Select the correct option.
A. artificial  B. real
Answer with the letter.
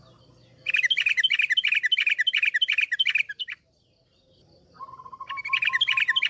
B